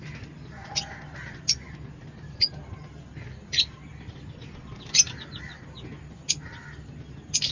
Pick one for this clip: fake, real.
real